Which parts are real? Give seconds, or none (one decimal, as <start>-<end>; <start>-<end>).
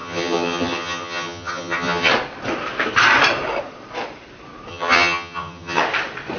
2.1-4.7; 5.8-6.4